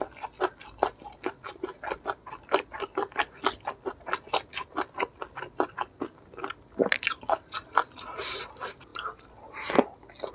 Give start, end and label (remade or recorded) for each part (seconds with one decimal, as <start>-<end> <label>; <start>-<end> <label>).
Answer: 0.0-10.3 recorded